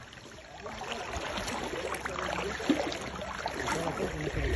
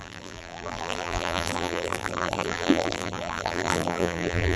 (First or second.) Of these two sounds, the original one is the first